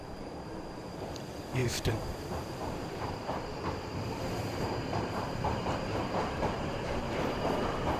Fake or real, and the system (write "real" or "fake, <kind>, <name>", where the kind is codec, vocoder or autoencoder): fake, vocoder, BigVGAN v2